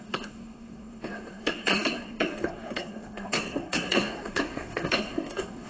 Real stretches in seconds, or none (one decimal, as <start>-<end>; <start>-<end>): none